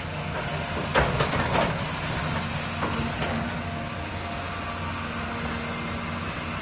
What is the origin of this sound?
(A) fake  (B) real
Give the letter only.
B